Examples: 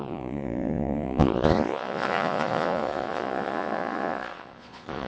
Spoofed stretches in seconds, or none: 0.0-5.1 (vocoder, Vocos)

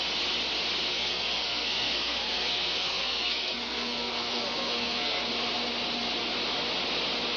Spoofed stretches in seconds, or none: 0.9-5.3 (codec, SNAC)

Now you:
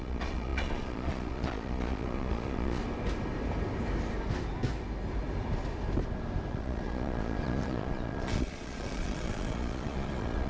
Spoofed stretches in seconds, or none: 0.0-2.8 (vocoder, Vocos); 6.5-10.5

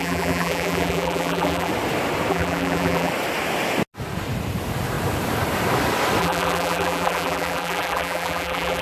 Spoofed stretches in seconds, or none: 0.0-1.7 (vocoder, BigVGAN v2); 2.3-3.1; 6.2-8.8

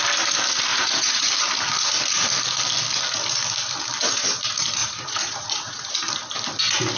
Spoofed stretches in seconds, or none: 0.7-1.3 (vocoder, Vocos); 4.8-5.9